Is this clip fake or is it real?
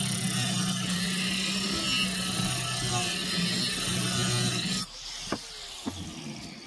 real